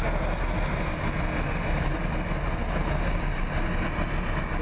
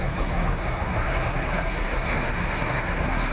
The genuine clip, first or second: first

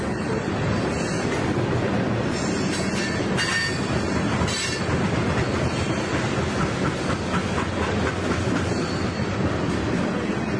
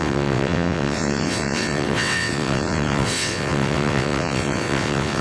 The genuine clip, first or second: first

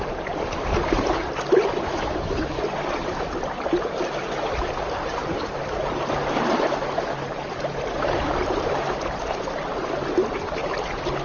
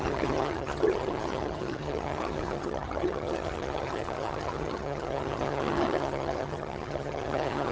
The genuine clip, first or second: first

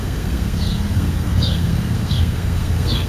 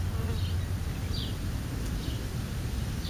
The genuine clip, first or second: second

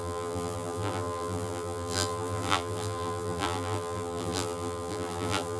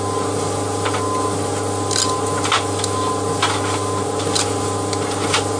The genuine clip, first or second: second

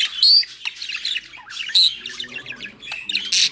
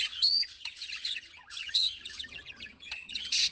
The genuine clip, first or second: first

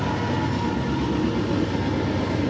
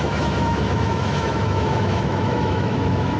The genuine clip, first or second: first